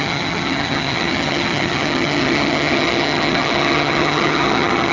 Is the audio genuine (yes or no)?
no